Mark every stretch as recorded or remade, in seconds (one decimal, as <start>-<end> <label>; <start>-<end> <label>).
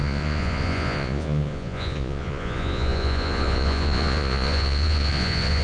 0.0-5.6 remade